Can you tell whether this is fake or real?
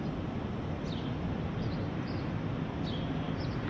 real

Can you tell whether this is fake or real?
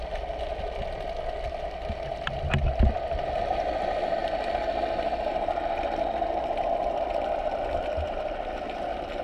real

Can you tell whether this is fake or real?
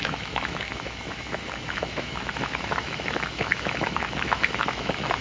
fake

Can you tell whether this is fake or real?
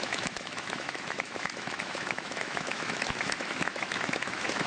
fake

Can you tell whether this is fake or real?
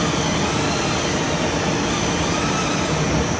real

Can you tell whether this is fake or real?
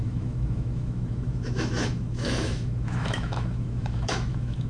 fake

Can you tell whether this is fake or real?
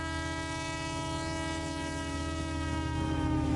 fake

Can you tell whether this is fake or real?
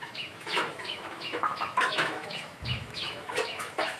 fake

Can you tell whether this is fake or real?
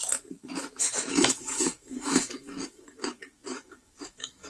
fake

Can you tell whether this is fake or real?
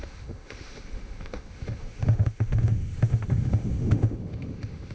fake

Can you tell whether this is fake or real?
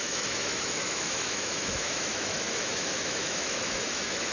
fake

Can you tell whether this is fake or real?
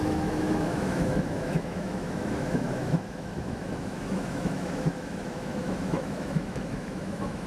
fake